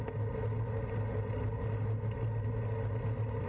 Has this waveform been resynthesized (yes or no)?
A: no